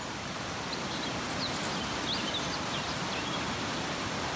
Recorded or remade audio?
recorded